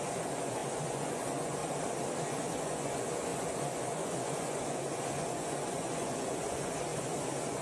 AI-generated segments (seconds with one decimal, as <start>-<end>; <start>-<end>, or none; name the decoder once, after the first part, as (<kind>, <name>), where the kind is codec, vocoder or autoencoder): 0.0-1.6 (vocoder, Vocos); 2.2-7.6

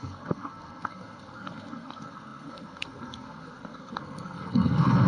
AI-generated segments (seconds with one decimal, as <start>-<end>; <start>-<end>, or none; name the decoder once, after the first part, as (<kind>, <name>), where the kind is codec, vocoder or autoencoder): 0.0-5.1 (codec, SNAC)

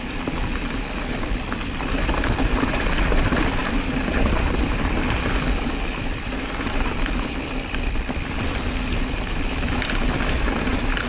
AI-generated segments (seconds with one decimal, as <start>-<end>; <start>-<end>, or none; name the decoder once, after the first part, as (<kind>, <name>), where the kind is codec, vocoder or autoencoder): none

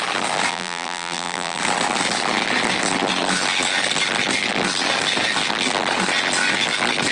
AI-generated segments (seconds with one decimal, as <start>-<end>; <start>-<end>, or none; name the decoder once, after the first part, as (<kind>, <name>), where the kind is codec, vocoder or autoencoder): 0.5-1.6 (vocoder, BigVGAN v2)

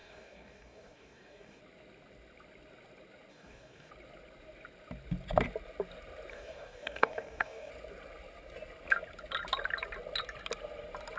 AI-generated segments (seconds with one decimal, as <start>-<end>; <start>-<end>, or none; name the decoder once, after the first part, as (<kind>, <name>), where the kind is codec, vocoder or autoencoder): 0.0-1.6 (codec, DAC); 3.3-3.9; 6.3-7.7